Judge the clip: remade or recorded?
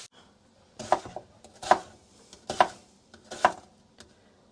recorded